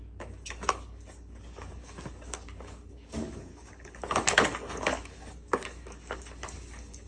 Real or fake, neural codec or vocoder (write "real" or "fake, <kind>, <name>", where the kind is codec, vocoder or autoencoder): fake, codec, DAC